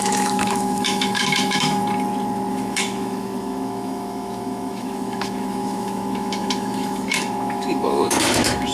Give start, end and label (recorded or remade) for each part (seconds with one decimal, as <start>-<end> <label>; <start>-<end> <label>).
0.0-1.8 remade; 1.8-2.5 recorded; 2.5-8.7 remade